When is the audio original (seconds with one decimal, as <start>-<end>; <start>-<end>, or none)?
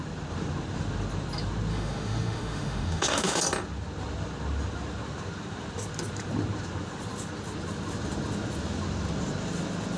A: 0.0-1.7; 3.4-10.0